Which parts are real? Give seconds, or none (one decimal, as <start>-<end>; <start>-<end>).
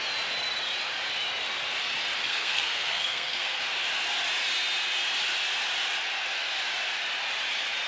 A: 0.0-2.2; 3.6-7.9